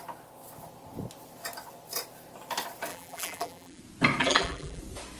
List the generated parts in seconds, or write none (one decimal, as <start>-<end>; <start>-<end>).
2.9-3.8; 4.2-4.8